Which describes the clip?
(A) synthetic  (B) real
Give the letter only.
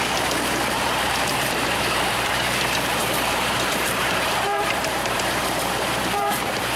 A